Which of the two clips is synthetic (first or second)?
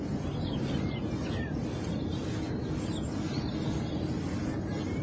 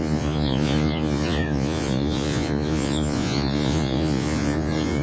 second